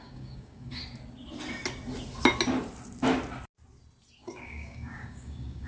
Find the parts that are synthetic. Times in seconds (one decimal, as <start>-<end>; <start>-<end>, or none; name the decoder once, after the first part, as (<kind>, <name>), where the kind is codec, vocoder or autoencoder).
0.0-0.8 (codec, DAC); 4.2-5.7